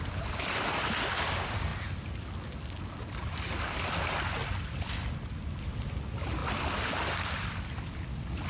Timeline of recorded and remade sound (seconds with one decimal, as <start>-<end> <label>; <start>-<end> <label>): 0.0-4.4 recorded; 4.4-5.9 remade; 5.9-8.5 recorded